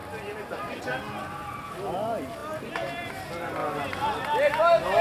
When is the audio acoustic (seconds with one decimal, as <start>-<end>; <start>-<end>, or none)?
0.0-5.0